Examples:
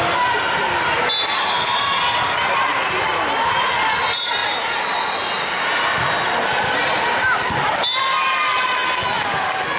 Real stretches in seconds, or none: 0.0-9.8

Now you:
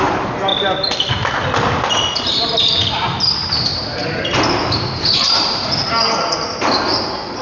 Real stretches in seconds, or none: 0.0-3.7; 5.7-7.4

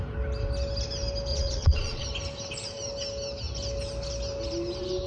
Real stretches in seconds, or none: 0.0-1.3; 2.1-5.1

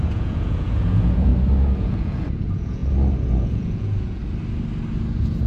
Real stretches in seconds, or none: 1.3-1.8; 4.2-5.1